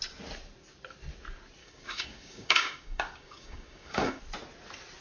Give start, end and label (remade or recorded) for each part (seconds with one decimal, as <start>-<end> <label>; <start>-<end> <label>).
0.0-1.6 recorded; 1.6-4.2 remade; 4.2-5.0 recorded